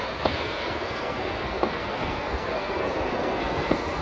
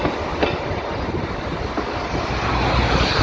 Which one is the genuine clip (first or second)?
second